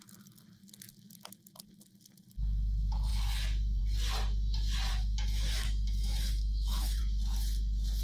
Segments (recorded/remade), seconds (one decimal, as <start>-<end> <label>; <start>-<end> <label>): 0.0-4.9 recorded; 4.9-7.0 remade; 7.0-8.0 recorded